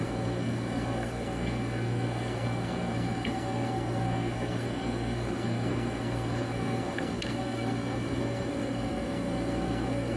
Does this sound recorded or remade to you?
remade